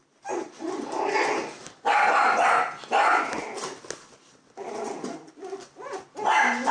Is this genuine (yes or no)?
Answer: yes